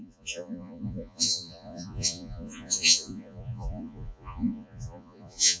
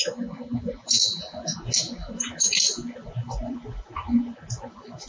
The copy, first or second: first